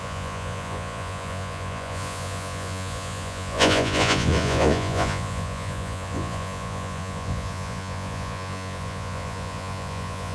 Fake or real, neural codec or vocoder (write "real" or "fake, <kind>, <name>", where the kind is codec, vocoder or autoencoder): fake, vocoder, Vocos